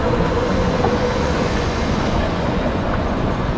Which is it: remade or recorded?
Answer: remade